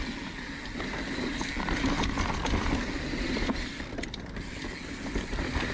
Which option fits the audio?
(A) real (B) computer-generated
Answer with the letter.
A